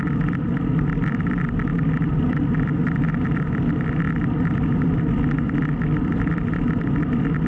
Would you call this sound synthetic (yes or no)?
yes